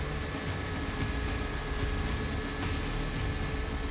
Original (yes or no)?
yes